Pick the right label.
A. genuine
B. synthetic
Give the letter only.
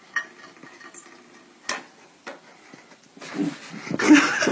A